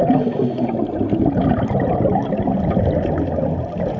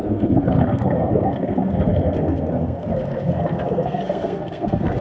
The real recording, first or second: first